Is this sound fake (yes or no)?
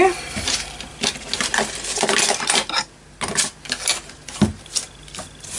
no